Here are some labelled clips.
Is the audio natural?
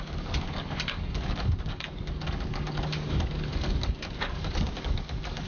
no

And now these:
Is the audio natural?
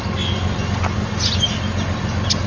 yes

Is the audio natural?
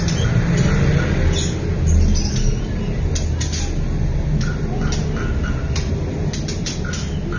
yes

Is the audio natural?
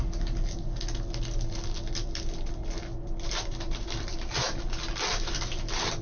yes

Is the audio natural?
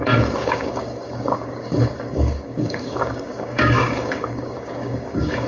no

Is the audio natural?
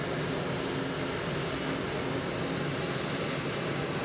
yes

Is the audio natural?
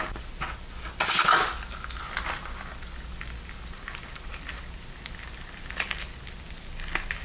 yes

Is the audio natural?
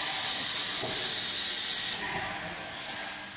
yes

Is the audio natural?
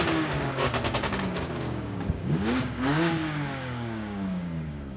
no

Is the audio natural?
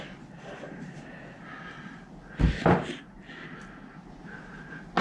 yes